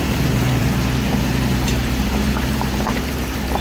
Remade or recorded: remade